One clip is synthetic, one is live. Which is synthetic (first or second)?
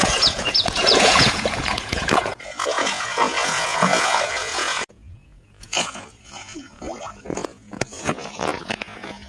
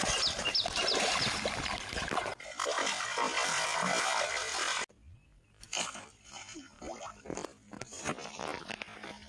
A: first